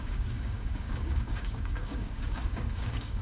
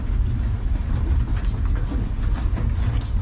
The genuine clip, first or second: second